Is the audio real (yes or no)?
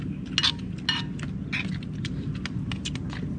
yes